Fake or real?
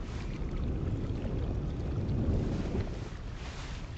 real